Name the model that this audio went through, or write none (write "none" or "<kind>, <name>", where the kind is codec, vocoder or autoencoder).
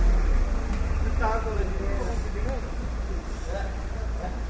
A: none